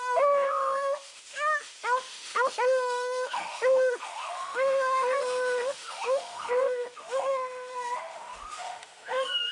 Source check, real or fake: fake